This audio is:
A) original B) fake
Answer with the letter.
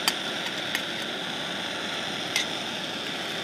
A